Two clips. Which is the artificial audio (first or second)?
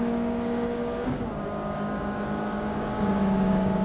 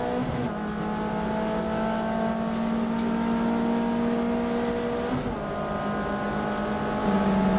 first